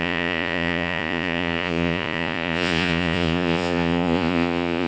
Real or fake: fake